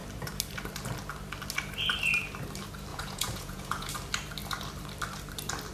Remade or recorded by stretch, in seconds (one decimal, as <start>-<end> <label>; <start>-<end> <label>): 0.0-2.9 recorded; 2.9-3.9 remade; 3.9-5.7 recorded